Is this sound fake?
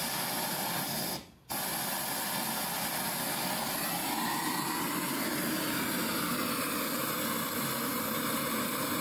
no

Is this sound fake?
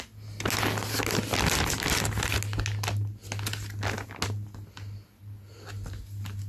no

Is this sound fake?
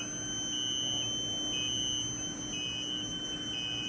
no